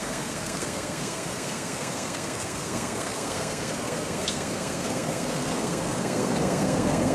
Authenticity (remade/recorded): remade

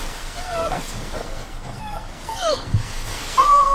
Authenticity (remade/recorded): remade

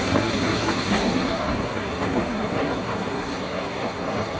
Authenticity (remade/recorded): remade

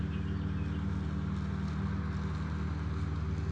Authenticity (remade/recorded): recorded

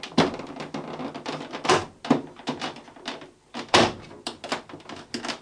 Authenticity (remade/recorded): recorded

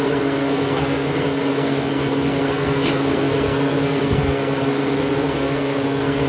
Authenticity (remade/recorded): remade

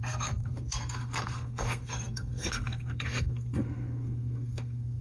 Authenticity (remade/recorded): remade